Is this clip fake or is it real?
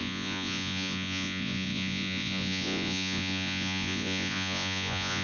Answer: fake